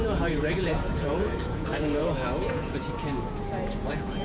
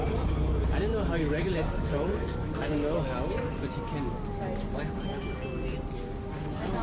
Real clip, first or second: second